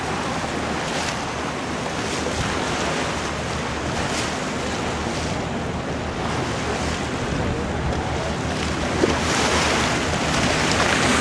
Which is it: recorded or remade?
recorded